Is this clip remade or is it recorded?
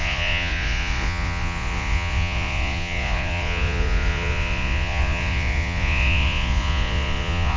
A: remade